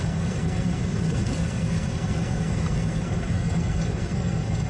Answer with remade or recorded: remade